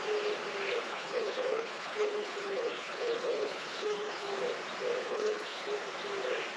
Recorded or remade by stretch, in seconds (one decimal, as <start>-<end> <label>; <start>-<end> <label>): 0.0-0.9 recorded; 0.9-4.3 remade; 4.3-5.0 recorded; 5.0-5.7 remade; 5.7-6.6 recorded